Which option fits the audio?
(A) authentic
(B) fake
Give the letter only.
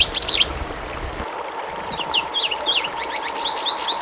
A